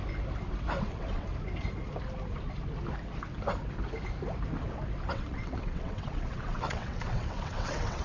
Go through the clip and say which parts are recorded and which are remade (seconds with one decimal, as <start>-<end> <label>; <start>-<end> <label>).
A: 0.0-0.8 recorded; 0.8-1.3 remade; 1.3-5.1 recorded; 5.1-8.0 remade